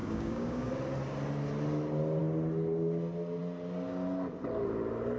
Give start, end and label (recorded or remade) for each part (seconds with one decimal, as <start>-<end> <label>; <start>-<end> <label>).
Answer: 0.0-0.7 remade; 0.7-5.2 recorded

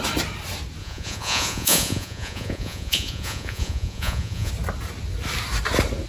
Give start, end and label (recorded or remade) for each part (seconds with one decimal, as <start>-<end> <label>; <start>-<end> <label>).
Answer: 0.0-0.8 recorded; 0.8-4.5 remade; 4.5-6.1 recorded

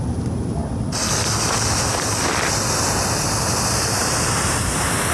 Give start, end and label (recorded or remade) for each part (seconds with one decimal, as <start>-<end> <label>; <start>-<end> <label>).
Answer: 0.0-0.6 remade; 0.6-3.7 recorded; 3.7-5.1 remade

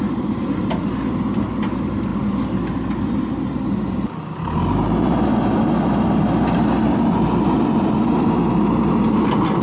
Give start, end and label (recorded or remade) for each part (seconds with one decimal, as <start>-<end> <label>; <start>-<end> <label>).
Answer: 0.0-9.6 recorded

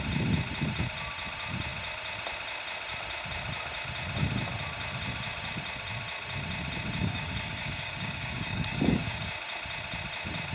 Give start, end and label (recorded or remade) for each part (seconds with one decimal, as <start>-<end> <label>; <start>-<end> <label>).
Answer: 0.0-7.0 recorded; 7.0-9.3 remade; 9.3-10.5 recorded

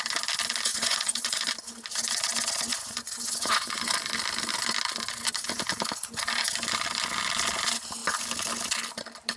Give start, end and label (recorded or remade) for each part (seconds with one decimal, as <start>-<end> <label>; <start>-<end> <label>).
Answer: 0.0-0.7 recorded; 0.7-1.5 remade; 1.5-2.7 recorded; 2.7-3.9 remade; 3.9-9.4 recorded

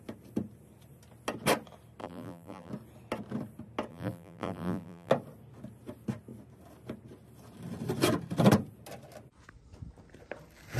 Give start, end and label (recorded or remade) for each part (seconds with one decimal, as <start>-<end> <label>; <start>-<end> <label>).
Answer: 0.0-2.0 recorded; 2.0-2.7 remade; 2.7-3.9 recorded; 3.9-5.1 remade; 5.1-10.8 recorded

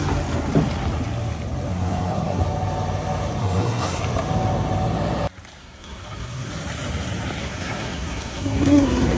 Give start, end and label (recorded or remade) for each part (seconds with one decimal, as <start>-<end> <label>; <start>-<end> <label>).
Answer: 0.0-1.7 recorded; 1.7-2.4 remade; 2.4-3.4 recorded; 3.4-4.0 remade; 4.0-5.6 recorded; 5.6-6.5 remade; 6.5-7.4 recorded; 7.4-9.2 remade